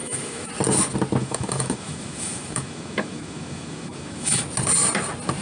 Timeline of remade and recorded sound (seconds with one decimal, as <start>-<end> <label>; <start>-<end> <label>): 0.0-0.5 remade; 0.5-1.2 recorded; 1.2-4.4 remade; 4.4-5.4 recorded

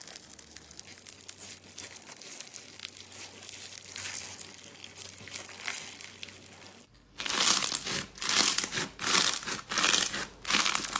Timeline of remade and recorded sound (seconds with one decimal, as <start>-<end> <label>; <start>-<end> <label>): 0.0-6.8 recorded; 6.8-7.3 remade; 7.3-11.0 recorded

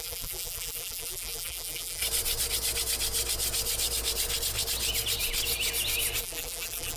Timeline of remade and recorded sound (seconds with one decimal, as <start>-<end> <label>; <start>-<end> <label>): 0.0-2.0 remade; 2.0-6.2 recorded; 6.2-7.0 remade

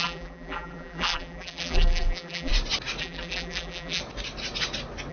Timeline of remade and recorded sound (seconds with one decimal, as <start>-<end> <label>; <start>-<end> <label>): 0.0-2.5 remade; 2.5-3.0 recorded; 3.0-4.0 remade; 4.0-5.1 recorded